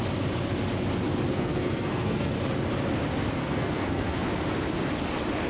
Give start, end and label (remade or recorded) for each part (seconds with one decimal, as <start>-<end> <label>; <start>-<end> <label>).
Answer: 0.0-1.3 recorded; 1.3-2.3 remade; 2.3-3.4 recorded; 3.4-4.2 remade; 4.2-5.5 recorded